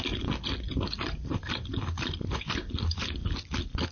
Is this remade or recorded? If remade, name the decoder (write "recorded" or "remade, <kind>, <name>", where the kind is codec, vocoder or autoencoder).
recorded